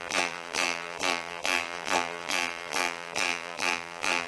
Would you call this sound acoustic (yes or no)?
no